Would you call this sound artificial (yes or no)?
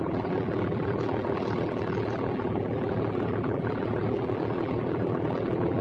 yes